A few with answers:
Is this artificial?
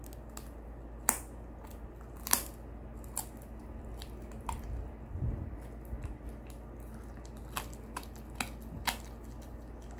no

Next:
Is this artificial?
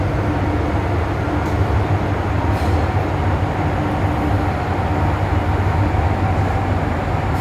no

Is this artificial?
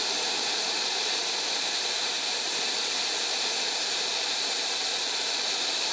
yes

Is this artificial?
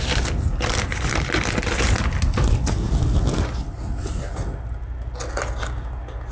no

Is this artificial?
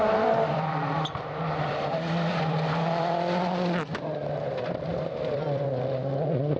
yes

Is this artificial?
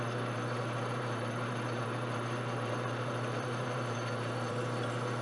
yes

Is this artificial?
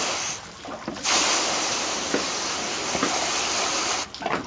no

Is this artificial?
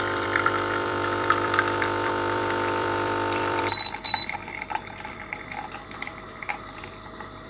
yes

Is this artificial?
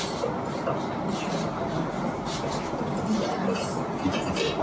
no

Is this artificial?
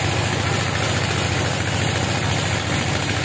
no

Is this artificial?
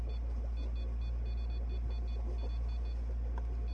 yes